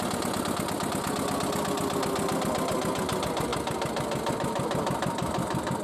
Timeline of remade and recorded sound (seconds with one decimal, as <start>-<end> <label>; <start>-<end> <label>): 0.0-5.8 recorded